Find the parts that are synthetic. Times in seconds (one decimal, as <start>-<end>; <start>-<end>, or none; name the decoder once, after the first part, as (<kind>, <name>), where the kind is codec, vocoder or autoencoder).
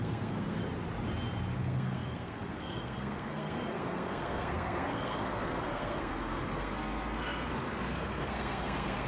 0.0-0.6 (codec, SNAC); 1.6-9.1